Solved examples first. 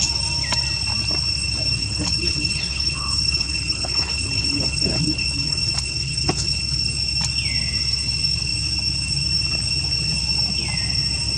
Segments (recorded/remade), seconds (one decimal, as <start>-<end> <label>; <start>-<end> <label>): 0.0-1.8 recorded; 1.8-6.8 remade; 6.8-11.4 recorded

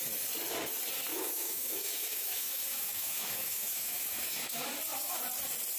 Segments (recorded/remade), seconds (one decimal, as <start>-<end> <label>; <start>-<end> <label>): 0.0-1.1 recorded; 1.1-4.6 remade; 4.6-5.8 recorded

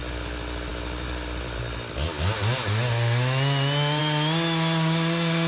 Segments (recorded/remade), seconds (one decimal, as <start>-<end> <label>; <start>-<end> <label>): 0.0-5.5 recorded